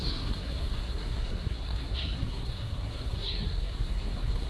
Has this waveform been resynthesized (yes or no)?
yes